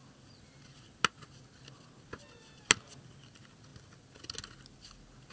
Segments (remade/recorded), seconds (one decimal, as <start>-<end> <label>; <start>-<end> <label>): 0.0-5.3 recorded